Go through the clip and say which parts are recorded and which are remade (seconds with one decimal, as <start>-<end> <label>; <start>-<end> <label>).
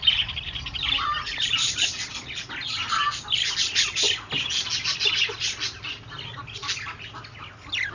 0.0-7.9 recorded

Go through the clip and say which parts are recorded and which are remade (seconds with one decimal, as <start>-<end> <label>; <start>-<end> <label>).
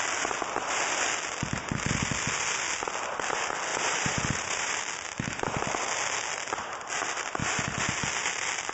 0.0-3.7 recorded; 3.7-4.7 remade; 4.7-8.7 recorded